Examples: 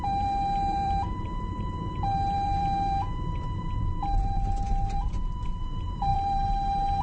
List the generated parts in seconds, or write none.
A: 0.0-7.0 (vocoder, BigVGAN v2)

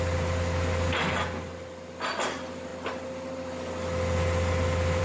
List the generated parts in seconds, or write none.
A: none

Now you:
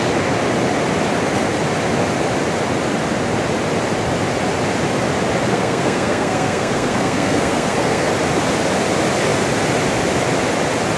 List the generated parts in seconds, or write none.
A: 5.5-8.1 (codec, SNAC)